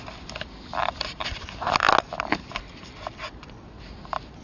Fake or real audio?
real